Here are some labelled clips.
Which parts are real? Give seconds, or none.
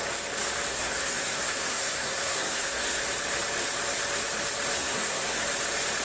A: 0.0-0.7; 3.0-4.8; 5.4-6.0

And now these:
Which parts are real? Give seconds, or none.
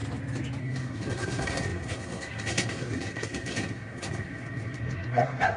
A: 0.0-0.6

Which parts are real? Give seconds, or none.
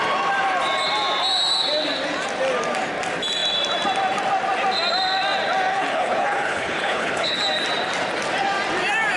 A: 0.0-5.7; 7.4-9.2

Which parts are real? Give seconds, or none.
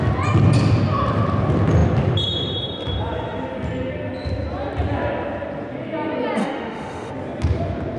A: 0.0-6.4; 7.1-8.0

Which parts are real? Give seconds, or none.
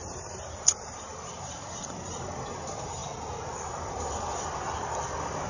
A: 3.0-3.7